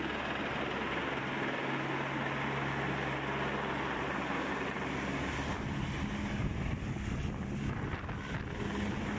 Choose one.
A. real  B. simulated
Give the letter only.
A